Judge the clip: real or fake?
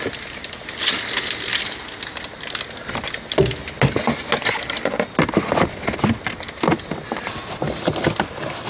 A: real